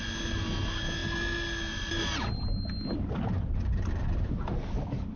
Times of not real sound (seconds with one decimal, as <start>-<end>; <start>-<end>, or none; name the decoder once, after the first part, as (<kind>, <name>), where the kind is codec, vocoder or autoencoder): none